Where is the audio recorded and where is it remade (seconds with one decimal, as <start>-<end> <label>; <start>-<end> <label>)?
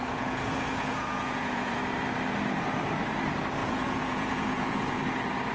0.0-1.8 remade; 1.8-3.6 recorded; 3.6-5.0 remade; 5.0-5.5 recorded